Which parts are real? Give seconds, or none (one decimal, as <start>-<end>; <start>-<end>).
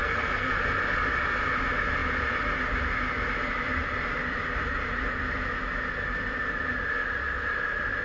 0.5-8.0